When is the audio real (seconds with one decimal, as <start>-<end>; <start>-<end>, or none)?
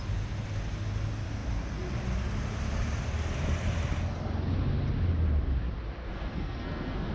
0.0-6.0